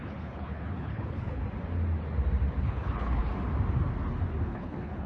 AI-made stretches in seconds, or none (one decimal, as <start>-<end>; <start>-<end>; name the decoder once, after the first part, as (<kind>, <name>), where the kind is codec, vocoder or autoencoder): 0.0-1.4 (codec, HILCodec); 2.6-3.3; 4.4-5.1